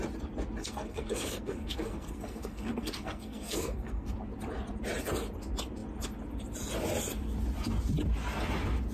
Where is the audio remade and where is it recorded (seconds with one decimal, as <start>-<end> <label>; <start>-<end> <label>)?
0.0-0.6 recorded; 0.6-4.1 remade; 4.1-8.9 recorded